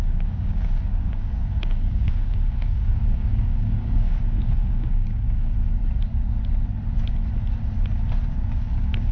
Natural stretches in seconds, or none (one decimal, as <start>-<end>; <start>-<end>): 5.6-8.3